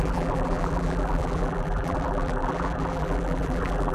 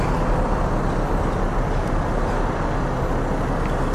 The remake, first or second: first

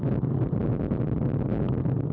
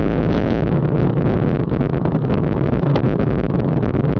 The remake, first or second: second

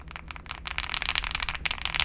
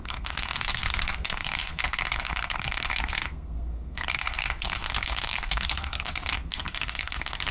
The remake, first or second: second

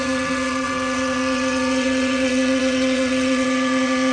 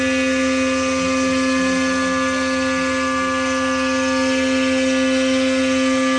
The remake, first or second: first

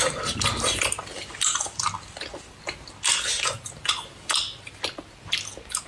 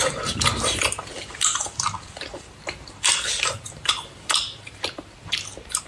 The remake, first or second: second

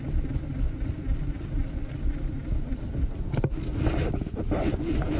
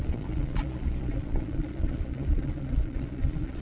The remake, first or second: second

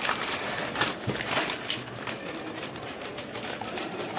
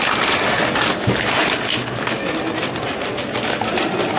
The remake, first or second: first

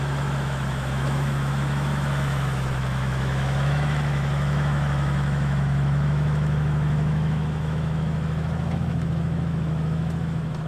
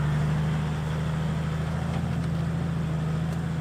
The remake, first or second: first